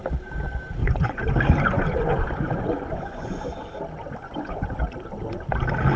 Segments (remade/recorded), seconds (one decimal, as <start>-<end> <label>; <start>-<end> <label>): 0.0-0.8 recorded; 0.8-3.3 remade; 3.3-4.2 recorded; 4.2-4.8 remade; 4.8-6.0 recorded